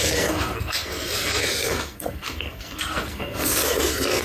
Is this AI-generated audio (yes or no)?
yes